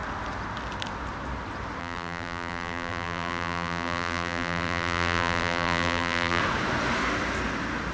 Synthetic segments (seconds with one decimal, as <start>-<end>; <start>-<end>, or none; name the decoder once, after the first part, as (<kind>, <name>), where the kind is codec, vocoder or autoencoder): 1.8-6.4 (vocoder, BigVGAN v2)